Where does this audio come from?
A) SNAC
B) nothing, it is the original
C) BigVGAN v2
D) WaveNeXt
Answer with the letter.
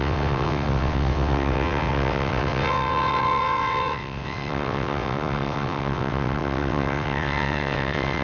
D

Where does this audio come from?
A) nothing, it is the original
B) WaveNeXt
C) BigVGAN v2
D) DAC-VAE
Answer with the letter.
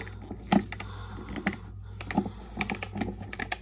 A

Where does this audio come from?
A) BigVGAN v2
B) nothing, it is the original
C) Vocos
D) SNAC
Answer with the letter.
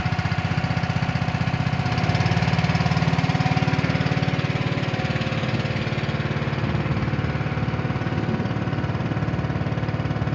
B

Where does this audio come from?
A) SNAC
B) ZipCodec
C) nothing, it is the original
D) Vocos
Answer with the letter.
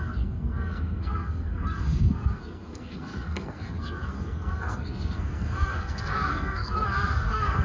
A